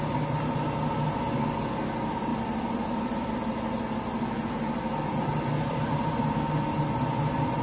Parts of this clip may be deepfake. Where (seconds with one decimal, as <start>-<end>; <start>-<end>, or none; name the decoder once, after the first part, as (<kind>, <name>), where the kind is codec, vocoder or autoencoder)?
2.3-3.3 (vocoder, BigVGAN v2); 5.1-6.2